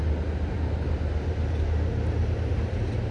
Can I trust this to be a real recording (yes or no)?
yes